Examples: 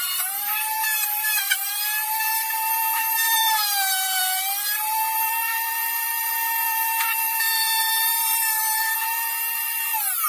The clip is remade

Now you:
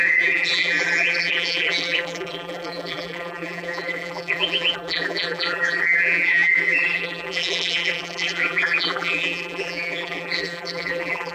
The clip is remade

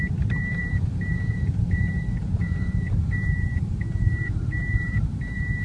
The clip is remade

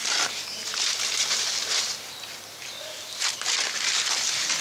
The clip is remade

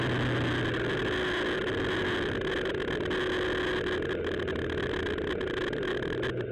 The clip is recorded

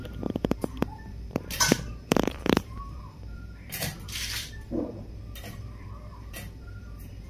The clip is remade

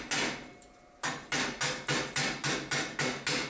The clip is recorded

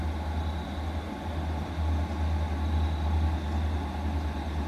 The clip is recorded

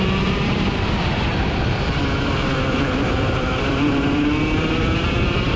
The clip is remade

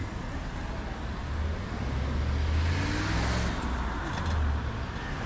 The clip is recorded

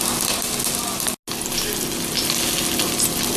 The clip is recorded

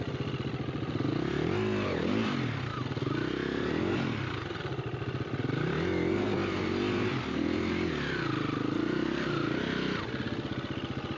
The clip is recorded